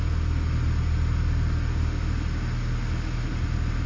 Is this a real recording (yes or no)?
yes